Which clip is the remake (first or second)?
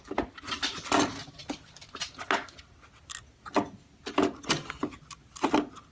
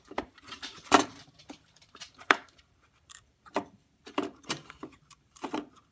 second